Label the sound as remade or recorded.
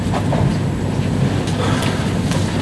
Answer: recorded